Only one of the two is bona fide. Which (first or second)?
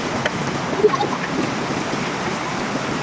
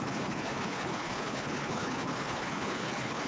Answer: first